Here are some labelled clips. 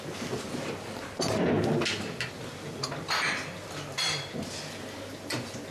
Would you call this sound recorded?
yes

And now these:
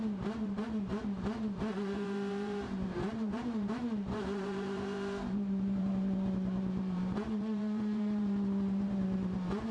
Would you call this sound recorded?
no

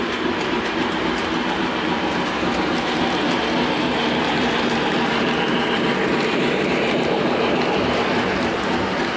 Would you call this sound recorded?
no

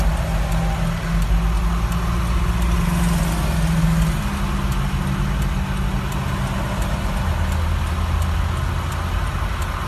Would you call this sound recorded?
yes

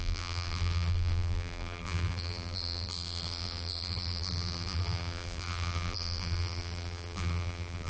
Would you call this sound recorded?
no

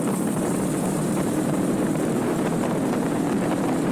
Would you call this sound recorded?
no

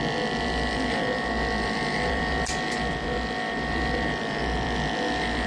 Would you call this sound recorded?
no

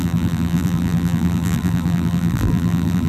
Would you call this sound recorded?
no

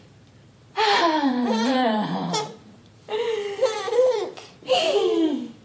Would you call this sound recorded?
no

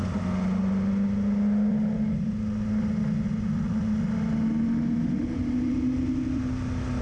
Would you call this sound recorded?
yes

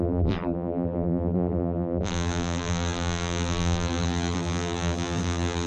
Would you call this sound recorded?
no